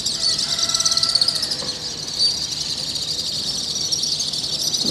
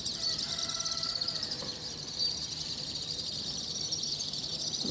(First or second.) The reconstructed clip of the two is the second